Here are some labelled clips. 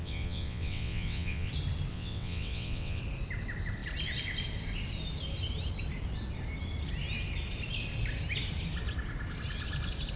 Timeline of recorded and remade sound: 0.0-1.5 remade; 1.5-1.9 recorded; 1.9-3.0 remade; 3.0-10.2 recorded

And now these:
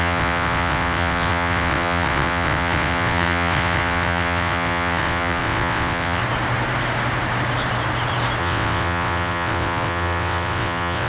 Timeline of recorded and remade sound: 0.0-6.2 remade; 6.2-8.4 recorded; 8.4-11.1 remade